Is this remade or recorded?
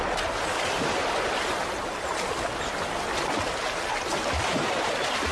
recorded